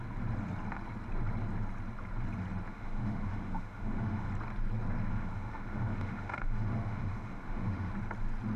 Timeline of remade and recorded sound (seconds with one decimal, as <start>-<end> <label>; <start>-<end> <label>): 0.0-2.7 recorded; 2.7-4.3 remade; 4.3-5.1 recorded; 5.1-7.9 remade; 7.9-8.6 recorded